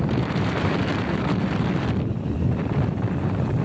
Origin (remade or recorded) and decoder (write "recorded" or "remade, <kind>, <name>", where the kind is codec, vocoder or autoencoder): remade, vocoder, BigVGAN v2